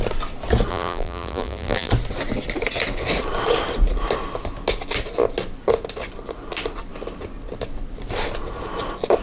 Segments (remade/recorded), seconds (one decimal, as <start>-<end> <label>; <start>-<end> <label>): 0.0-0.7 recorded; 0.7-1.9 remade; 1.9-9.2 recorded